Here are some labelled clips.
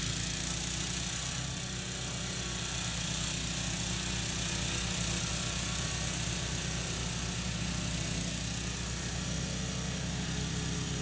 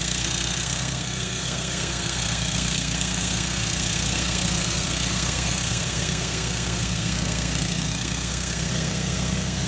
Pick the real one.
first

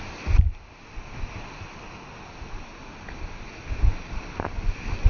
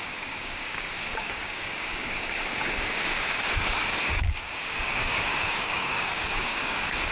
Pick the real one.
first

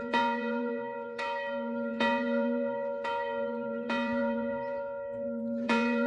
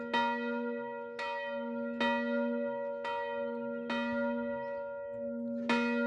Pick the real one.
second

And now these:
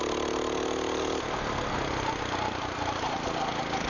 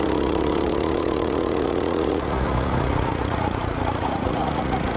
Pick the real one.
first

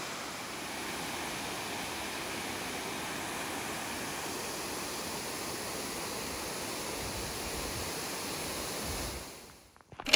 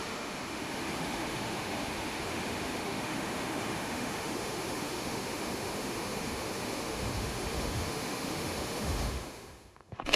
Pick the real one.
first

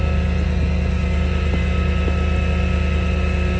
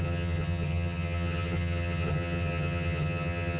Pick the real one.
first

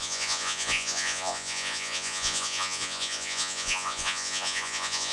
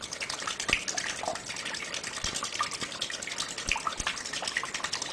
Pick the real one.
second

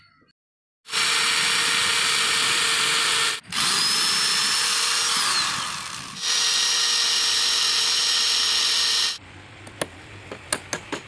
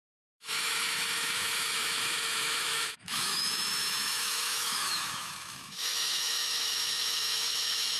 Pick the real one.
first